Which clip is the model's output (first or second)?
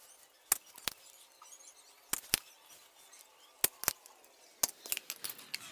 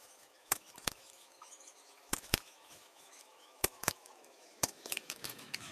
second